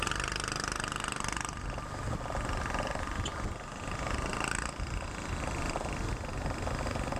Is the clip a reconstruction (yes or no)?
no